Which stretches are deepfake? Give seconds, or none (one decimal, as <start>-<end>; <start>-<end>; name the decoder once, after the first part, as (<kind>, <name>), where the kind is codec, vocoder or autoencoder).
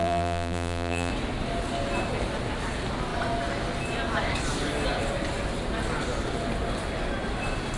0.0-1.1 (vocoder, BigVGAN v2)